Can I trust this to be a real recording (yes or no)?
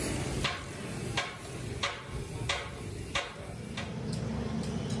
yes